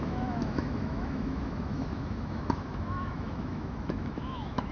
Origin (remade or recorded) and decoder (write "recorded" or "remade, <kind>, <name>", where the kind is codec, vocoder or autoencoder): remade, autoencoder, DAC-VAE